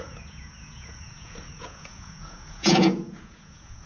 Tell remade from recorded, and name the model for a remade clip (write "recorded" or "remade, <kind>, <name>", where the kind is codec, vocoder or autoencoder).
remade, vocoder, Vocos